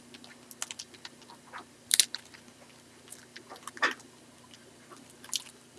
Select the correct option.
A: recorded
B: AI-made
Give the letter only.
A